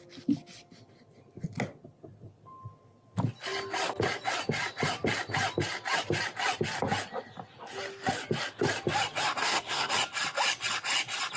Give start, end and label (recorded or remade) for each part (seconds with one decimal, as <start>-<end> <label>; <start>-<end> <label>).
0.0-9.4 recorded; 9.4-9.9 remade; 9.9-11.4 recorded